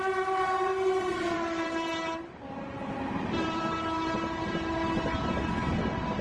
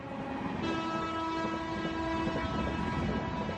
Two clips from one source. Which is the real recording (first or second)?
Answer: second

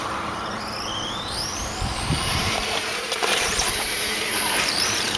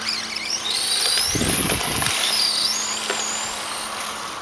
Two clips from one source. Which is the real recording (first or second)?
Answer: second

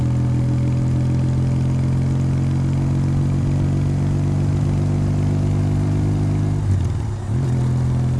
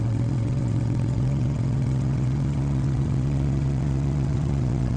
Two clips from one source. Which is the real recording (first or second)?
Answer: first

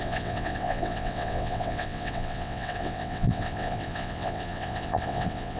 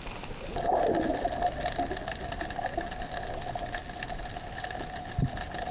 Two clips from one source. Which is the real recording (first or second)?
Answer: second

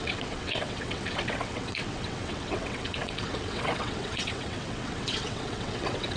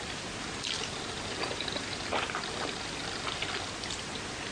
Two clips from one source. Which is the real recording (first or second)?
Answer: second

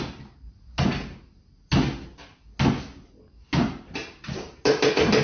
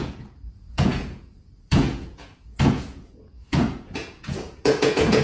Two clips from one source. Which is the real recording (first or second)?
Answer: first